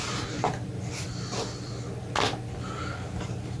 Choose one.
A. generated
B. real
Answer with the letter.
B